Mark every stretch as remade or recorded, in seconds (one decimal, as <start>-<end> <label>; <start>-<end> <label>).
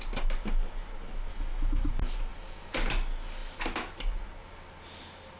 0.0-1.3 recorded; 1.3-1.9 remade; 1.9-5.4 recorded